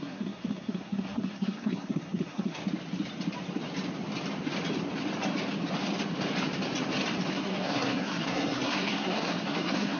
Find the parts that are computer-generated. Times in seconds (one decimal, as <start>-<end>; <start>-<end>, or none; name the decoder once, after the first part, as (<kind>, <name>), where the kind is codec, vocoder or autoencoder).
0.0-2.6 (codec, SNAC); 7.3-10.0